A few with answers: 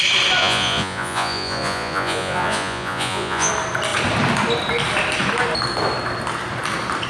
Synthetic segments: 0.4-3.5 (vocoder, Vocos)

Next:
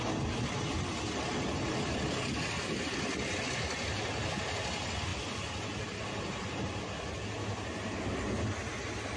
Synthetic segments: none

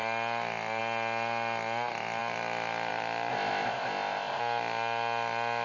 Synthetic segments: 3.3-4.4 (codec, ZipCodec)

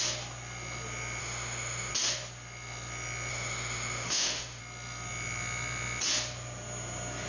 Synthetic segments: 1.2-1.9 (autoencoder, DAC-VAE); 3.3-4.6

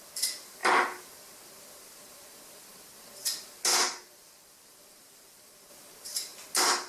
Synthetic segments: 0.6-1.1 (vocoder, BigVGAN v2); 3.7-5.7

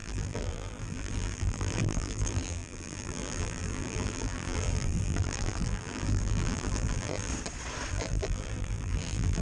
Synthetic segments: 0.0-7.3 (vocoder, BigVGAN v2); 7.9-9.4

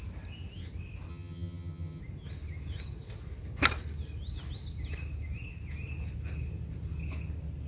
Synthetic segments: 1.1-2.0 (vocoder, HiFi-GAN)

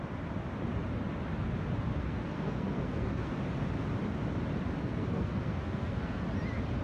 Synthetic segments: 1.9-3.3 (codec, SNAC); 4.8-6.2